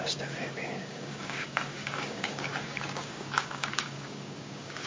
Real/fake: fake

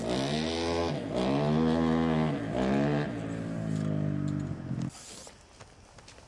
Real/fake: real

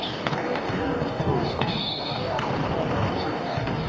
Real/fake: fake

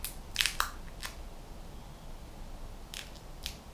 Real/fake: real